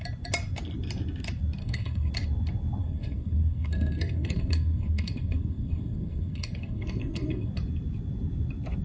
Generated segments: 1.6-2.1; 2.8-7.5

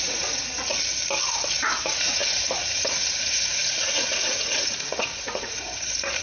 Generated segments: 0.0-0.7; 1.7-6.2